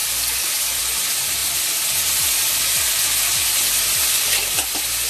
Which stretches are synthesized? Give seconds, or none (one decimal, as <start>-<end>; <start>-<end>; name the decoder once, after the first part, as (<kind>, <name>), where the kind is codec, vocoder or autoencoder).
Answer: 0.0-0.8 (vocoder, BigVGAN v2)